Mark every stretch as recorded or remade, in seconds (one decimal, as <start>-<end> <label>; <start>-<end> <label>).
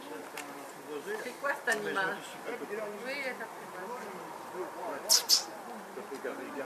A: 0.0-6.6 recorded